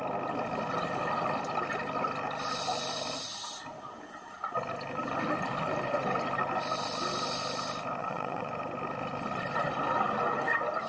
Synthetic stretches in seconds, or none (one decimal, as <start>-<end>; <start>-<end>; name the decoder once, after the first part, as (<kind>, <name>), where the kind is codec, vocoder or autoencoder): 8.0-8.5 (vocoder, WaveNeXt)

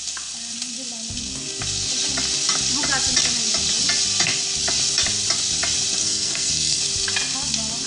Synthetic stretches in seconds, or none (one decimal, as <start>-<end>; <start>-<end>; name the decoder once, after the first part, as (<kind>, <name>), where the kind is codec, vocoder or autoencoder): 6.0-6.8 (codec, SNAC)

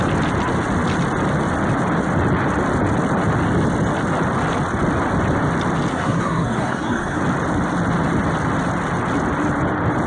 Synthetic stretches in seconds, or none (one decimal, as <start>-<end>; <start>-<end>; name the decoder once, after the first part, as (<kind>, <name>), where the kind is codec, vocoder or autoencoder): 5.9-7.2 (codec, SNAC)